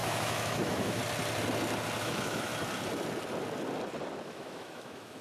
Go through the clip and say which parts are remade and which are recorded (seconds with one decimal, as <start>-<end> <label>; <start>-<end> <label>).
0.0-1.0 remade; 1.0-2.0 recorded; 2.0-2.5 remade; 2.5-4.2 recorded; 4.2-5.2 remade

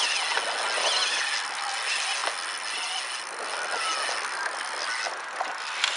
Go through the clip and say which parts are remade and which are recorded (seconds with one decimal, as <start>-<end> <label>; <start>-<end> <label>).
0.0-6.0 recorded

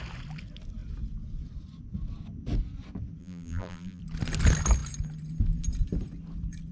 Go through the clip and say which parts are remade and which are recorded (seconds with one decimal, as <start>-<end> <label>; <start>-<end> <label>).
0.0-3.2 recorded; 3.2-4.0 remade; 4.0-6.7 recorded

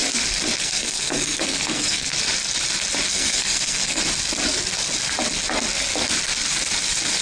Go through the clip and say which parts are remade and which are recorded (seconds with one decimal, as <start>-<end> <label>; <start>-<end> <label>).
0.0-0.6 recorded; 0.6-2.1 remade; 2.1-3.1 recorded; 3.1-4.0 remade; 4.0-7.2 recorded